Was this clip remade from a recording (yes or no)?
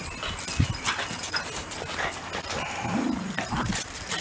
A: no